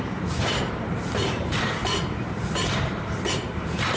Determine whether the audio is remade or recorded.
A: remade